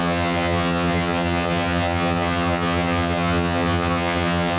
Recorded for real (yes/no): no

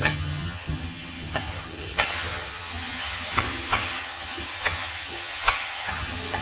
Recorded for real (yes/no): no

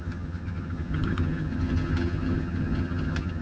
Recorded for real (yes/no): no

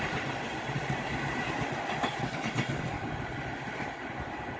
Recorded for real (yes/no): yes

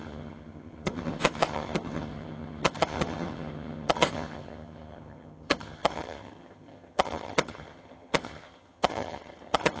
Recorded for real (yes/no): no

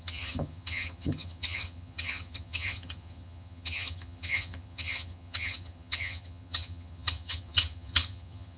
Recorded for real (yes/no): no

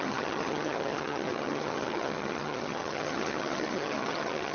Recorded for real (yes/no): no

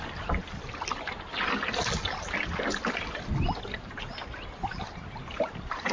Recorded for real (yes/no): yes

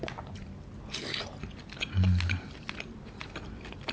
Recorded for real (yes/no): yes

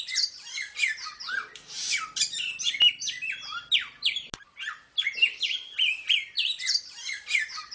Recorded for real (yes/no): yes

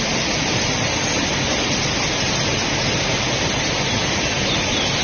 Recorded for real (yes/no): yes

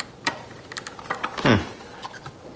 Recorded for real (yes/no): yes